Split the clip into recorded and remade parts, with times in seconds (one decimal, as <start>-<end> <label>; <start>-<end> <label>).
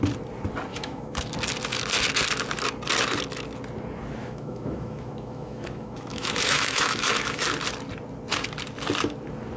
0.0-0.7 recorded; 0.7-1.3 remade; 1.3-4.2 recorded; 4.2-7.4 remade; 7.4-9.6 recorded